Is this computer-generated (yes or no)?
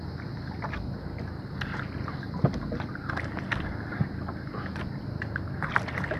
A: no